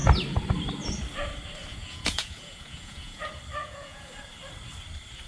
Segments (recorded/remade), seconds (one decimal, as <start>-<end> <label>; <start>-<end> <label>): 0.0-1.7 recorded; 1.7-3.2 remade; 3.2-3.6 recorded; 3.6-4.1 remade; 4.1-5.3 recorded

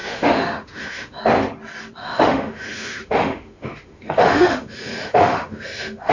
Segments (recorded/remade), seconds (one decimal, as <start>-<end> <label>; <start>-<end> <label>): 0.0-1.2 remade; 1.2-2.0 recorded; 2.0-6.1 remade